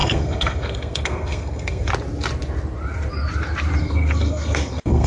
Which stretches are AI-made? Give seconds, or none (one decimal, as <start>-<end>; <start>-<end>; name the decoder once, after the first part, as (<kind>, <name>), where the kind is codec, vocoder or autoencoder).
0.0-1.9 (codec, SNAC); 3.8-5.1